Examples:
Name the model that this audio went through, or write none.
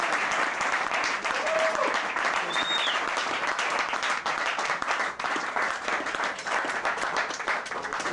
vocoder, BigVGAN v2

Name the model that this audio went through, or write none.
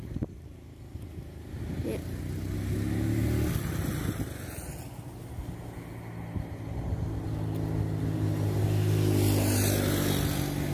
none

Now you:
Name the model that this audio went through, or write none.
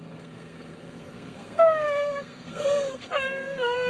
codec, SNAC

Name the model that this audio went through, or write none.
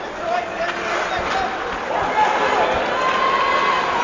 none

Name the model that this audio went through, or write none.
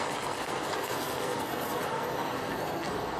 codec, SNAC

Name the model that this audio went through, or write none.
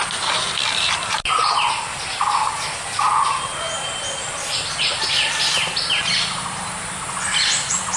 none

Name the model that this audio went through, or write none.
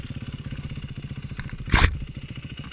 vocoder, BigVGAN v2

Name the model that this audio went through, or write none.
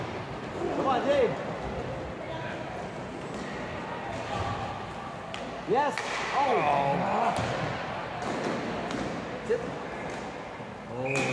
none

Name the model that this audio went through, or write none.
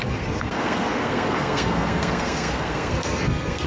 codec, SNAC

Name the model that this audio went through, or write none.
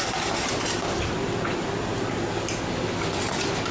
none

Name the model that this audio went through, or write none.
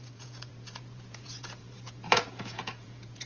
vocoder, Vocos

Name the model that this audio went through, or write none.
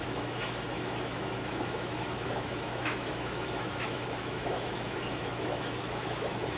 autoencoder, DAC-VAE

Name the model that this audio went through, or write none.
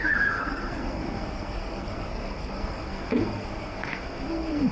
codec, SNAC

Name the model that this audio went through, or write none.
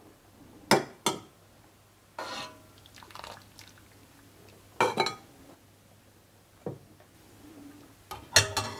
none